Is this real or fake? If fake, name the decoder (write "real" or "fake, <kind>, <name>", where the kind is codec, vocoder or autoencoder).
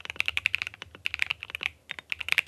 real